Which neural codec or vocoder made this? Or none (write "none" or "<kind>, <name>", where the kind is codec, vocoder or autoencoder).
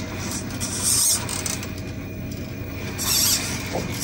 none